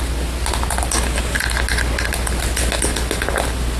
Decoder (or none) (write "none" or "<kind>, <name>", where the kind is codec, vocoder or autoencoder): none